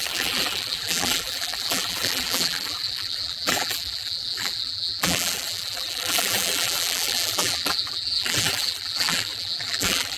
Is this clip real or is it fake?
fake